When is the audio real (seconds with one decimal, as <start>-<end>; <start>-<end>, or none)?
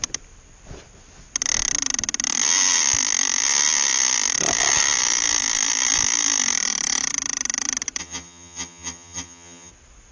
0.0-8.0; 9.7-10.1